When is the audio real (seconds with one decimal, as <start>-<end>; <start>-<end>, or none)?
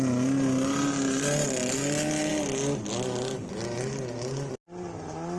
0.0-5.4